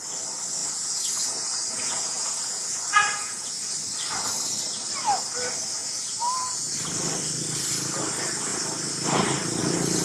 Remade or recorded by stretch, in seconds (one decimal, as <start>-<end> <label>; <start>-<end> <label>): 0.0-0.6 recorded; 0.6-3.5 remade; 3.5-5.8 recorded; 5.8-6.7 remade; 6.7-10.0 recorded